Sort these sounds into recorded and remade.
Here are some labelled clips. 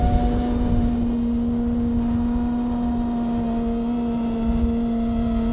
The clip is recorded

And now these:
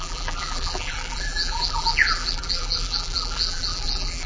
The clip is remade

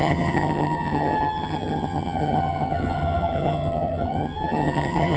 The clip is remade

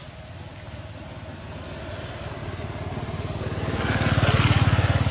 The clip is recorded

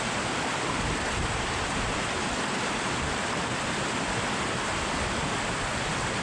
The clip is remade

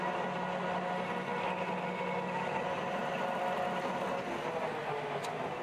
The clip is recorded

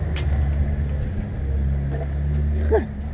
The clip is recorded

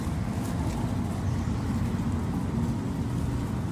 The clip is recorded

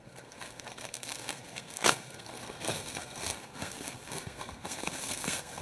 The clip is remade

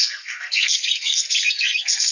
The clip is remade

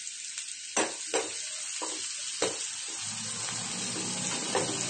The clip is recorded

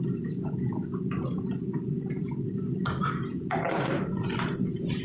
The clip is recorded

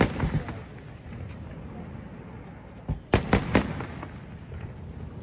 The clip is recorded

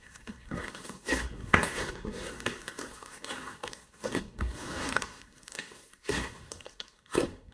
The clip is remade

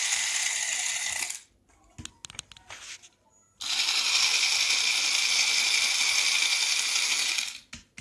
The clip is recorded